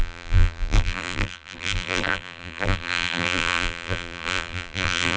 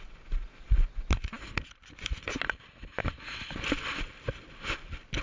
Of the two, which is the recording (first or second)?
second